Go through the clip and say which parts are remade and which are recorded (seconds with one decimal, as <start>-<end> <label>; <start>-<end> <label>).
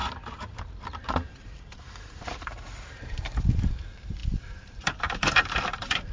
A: 0.0-6.1 remade